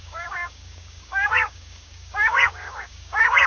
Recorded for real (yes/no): no